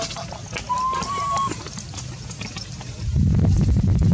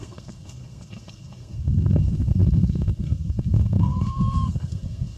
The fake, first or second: second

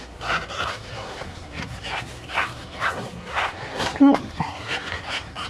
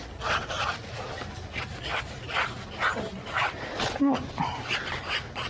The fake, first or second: first